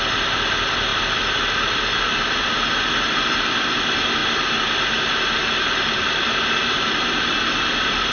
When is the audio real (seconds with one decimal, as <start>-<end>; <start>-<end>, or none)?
4.2-5.5